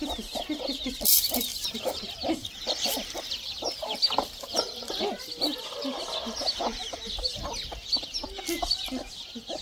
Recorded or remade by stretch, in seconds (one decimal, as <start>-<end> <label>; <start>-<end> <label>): 0.0-1.5 recorded; 1.5-2.0 remade; 2.0-2.4 recorded; 2.4-4.8 remade; 4.8-7.3 recorded; 7.3-8.0 remade; 8.0-9.6 recorded